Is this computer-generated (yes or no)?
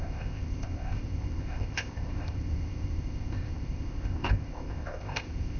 yes